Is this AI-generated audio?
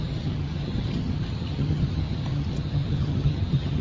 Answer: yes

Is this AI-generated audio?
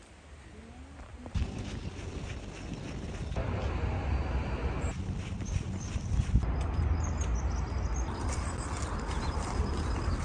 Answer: no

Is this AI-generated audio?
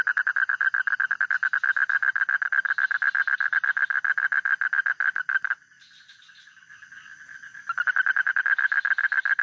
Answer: no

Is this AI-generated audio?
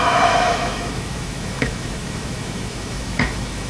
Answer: yes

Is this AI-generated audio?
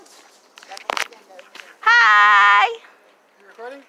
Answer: no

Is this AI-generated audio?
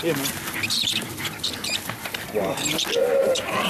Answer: no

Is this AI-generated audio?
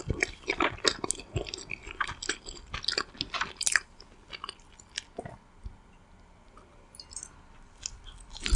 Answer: no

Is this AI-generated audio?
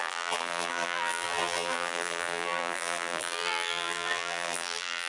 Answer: yes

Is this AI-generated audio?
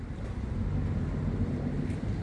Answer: no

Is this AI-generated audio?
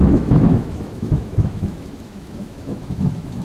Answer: yes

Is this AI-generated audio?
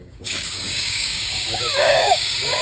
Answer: yes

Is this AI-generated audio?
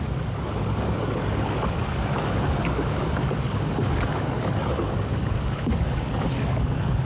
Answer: yes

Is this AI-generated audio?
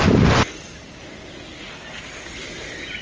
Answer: no